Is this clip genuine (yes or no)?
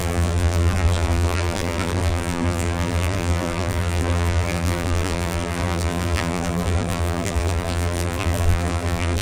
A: no